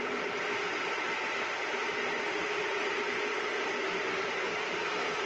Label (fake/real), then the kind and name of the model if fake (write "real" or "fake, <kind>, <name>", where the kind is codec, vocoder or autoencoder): real